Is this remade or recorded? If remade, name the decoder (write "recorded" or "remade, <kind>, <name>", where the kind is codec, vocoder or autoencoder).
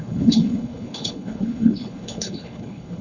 remade, codec, HILCodec